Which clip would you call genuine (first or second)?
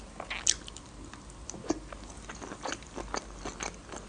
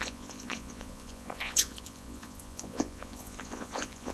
first